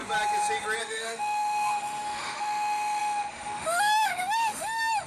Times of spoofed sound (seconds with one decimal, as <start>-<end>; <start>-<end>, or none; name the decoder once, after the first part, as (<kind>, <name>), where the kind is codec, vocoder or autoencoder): 0.8-5.1 (autoencoder, DAC-VAE)